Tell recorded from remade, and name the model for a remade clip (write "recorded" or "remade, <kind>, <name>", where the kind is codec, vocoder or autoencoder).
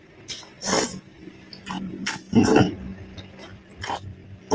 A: remade, vocoder, BigVGAN v2